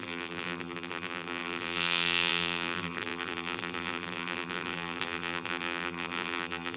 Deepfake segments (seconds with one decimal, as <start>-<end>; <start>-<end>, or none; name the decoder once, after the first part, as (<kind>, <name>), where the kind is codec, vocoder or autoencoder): 0.0-6.8 (vocoder, BigVGAN v2)